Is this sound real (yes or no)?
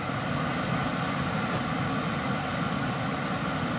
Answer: yes